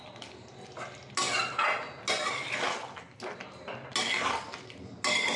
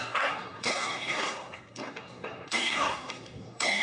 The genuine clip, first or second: first